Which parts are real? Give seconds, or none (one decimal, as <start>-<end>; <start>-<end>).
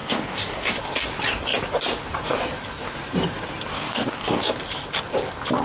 0.7-3.7; 4.4-5.6